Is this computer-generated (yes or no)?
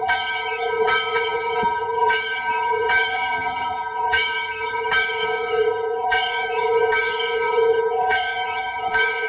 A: yes